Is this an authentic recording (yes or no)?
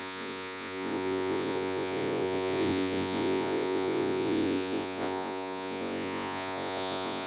no